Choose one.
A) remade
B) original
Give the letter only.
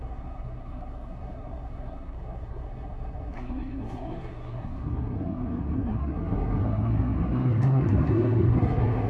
A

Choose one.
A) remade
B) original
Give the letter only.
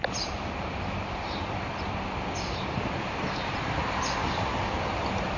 B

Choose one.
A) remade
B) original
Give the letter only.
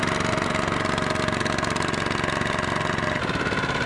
B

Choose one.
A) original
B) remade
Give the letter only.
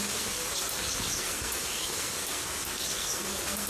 B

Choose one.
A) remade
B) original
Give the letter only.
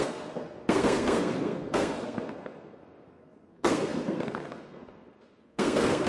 A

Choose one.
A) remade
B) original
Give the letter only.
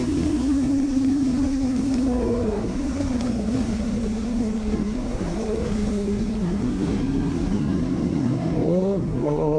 A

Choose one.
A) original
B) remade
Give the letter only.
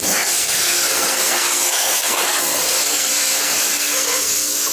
B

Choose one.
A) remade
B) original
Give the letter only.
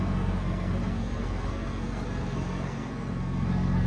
A